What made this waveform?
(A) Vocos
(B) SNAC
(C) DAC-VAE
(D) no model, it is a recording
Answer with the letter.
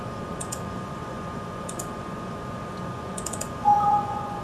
A